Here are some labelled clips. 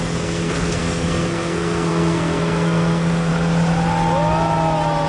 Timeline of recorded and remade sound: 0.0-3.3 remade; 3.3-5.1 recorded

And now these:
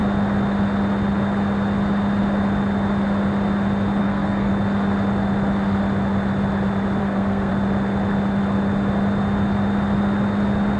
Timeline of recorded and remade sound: 0.0-4.0 recorded; 4.0-4.5 remade; 4.5-7.0 recorded; 7.0-7.5 remade; 7.5-10.8 recorded

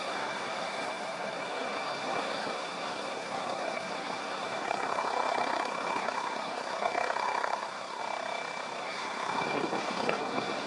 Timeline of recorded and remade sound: 0.0-8.0 remade; 8.0-8.8 recorded; 8.8-10.7 remade